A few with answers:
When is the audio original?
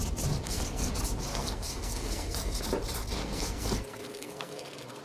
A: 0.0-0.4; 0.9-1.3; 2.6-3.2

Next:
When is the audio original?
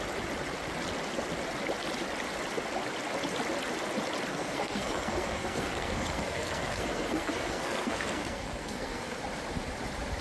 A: 0.0-4.3; 9.2-10.2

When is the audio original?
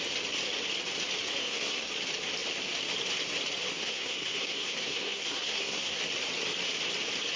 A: 0.0-1.4; 1.9-3.8; 6.0-7.4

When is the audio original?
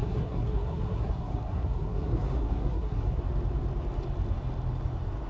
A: 3.2-5.3